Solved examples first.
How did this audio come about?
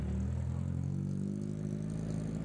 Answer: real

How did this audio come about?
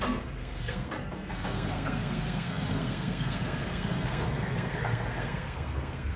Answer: fake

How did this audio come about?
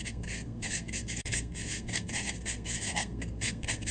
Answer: fake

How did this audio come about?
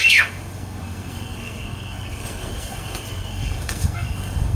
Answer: fake